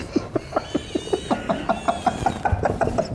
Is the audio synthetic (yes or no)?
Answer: no